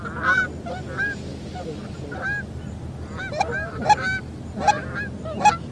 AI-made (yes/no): no